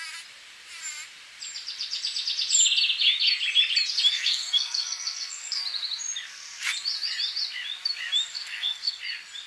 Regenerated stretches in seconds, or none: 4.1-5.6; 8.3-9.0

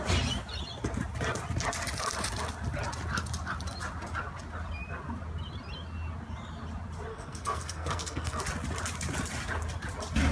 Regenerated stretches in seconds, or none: 7.1-8.4

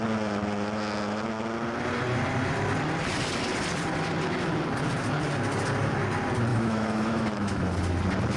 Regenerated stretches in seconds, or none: 6.5-7.7